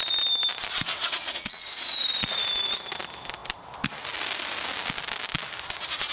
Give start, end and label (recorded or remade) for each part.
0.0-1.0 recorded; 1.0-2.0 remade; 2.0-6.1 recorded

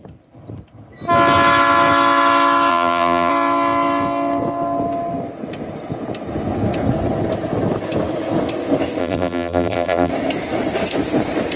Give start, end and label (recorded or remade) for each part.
0.0-2.7 recorded; 2.7-3.3 remade; 3.3-9.0 recorded; 9.0-10.1 remade; 10.1-11.6 recorded

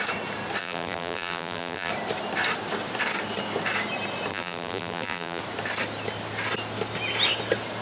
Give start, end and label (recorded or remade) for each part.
0.0-0.6 recorded; 0.6-1.9 remade; 1.9-4.3 recorded; 4.3-5.4 remade; 5.4-7.8 recorded

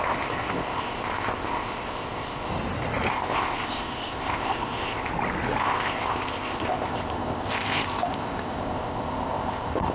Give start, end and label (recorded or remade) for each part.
0.0-2.5 remade; 2.5-3.1 recorded; 3.1-5.1 remade; 5.1-5.6 recorded; 5.6-9.9 remade